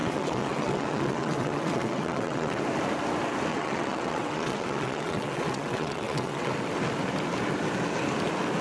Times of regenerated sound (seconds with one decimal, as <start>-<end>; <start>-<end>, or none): 0.0-2.6; 3.5-6.5